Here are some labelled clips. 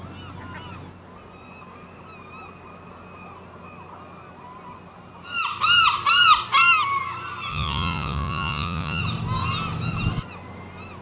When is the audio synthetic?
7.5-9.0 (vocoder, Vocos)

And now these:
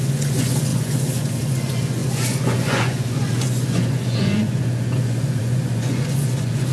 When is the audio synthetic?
0.0-6.7 (vocoder, Vocos)